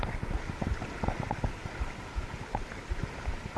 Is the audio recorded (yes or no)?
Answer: yes